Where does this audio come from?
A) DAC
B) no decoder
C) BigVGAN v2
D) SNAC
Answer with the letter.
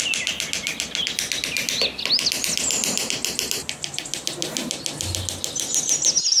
B